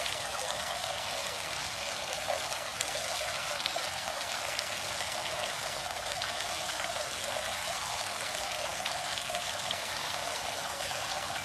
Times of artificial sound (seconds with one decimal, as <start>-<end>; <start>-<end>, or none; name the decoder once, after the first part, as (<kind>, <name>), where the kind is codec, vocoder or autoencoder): 0.0-11.4 (codec, SNAC)